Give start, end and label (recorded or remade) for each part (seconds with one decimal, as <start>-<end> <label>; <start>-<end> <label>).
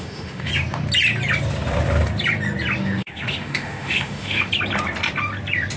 0.0-0.5 remade; 0.5-2.8 recorded; 2.8-4.5 remade; 4.5-5.8 recorded